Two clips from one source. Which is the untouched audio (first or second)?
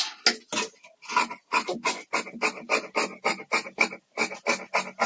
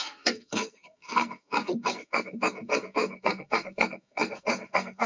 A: first